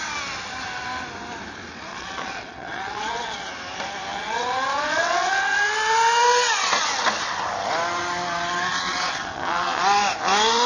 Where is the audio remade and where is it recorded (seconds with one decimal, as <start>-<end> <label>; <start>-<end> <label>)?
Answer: 0.0-1.9 recorded; 1.9-3.5 remade; 3.5-4.1 recorded; 4.1-5.6 remade; 5.6-8.7 recorded; 8.7-9.8 remade; 9.8-10.7 recorded

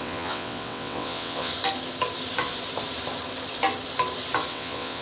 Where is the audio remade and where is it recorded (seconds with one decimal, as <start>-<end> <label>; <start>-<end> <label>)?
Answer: 0.0-1.5 remade; 1.5-4.5 recorded; 4.5-5.0 remade

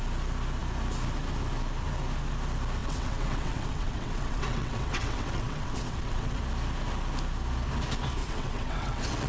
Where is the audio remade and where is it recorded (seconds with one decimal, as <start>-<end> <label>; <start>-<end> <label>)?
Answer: 0.0-2.8 recorded; 2.8-6.4 remade; 6.4-8.2 recorded; 8.2-9.3 remade

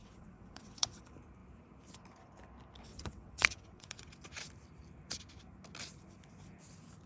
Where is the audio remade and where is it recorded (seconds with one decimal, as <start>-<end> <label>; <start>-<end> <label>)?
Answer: 0.0-1.0 remade; 1.0-2.8 recorded; 2.8-4.1 remade; 4.1-7.1 recorded

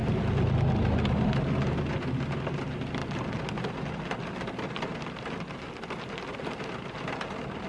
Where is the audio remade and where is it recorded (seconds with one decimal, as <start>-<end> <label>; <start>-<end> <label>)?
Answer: 0.0-7.7 recorded